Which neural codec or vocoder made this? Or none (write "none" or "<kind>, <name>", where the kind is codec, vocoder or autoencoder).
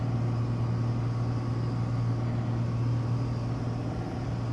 none